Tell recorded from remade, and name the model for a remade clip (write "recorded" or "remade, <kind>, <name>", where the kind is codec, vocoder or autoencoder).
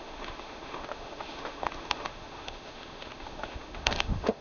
remade, autoencoder, DAC-VAE